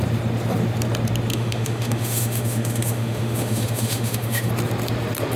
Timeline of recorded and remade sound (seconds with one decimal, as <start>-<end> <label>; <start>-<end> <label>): 0.0-1.3 recorded; 1.3-4.5 remade; 4.5-5.4 recorded